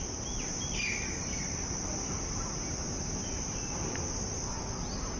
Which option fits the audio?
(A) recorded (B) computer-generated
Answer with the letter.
A